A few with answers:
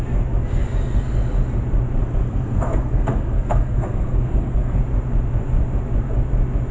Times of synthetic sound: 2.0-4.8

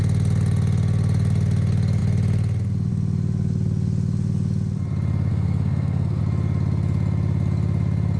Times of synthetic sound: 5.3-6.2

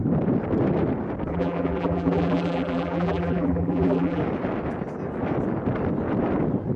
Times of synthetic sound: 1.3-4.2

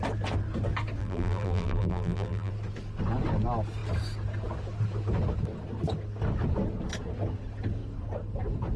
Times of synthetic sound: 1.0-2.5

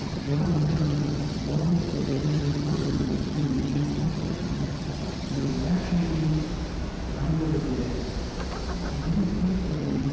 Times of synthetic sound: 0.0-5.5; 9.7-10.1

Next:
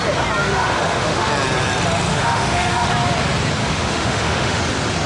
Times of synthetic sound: 0.4-1.3; 2.1-2.9; 3.6-4.6

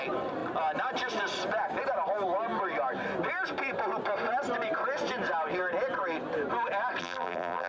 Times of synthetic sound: 7.0-7.7